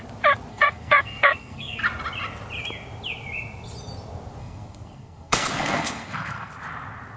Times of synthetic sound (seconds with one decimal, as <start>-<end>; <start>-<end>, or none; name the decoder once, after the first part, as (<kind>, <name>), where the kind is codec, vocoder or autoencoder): 0.5-1.8 (codec, SNAC); 4.4-6.5